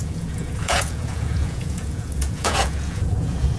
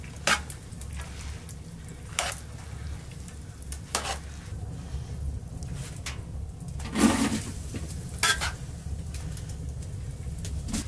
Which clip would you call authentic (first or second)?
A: second